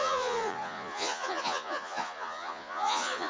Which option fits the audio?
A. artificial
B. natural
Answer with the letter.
A